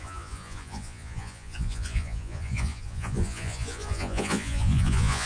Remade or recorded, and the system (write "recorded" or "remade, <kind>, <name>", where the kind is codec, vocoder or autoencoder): remade, vocoder, Vocos